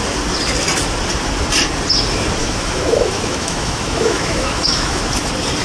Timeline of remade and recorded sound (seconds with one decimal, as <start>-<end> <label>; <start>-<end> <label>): 0.0-2.4 recorded; 2.4-5.1 remade; 5.1-5.6 recorded